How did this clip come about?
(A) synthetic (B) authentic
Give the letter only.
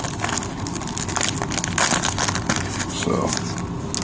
B